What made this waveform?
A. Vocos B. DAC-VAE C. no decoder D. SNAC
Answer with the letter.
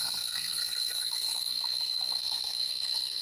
D